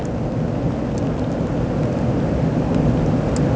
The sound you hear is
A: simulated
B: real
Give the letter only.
B